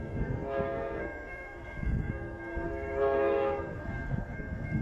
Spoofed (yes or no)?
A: yes